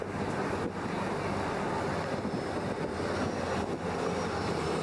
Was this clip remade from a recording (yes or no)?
no